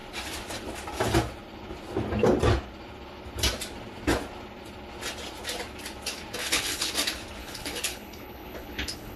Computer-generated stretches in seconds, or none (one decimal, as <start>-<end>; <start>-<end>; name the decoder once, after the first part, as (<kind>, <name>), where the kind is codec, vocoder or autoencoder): 6.4-6.9 (codec, HILCodec); 7.4-9.2